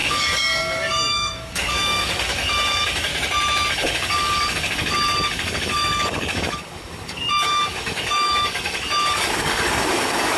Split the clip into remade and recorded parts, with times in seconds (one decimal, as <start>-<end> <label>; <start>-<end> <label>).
0.0-3.1 remade; 3.1-3.7 recorded; 3.7-10.4 remade

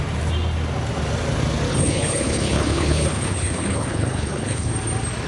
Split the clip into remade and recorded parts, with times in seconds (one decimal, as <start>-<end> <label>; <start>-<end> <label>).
0.0-1.7 recorded; 1.7-4.7 remade; 4.7-5.3 recorded